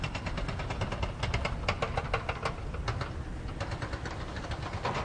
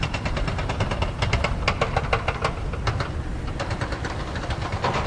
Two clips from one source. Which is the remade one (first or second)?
second